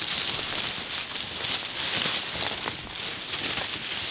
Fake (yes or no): no